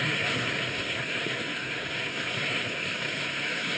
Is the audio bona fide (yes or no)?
no